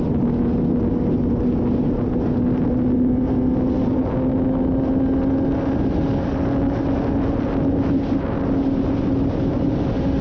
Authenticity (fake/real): real